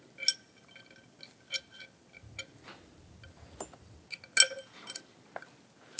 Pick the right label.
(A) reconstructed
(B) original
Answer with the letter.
B